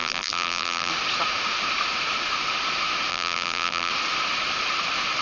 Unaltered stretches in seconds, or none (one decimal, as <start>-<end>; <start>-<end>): 0.9-3.1; 3.9-5.2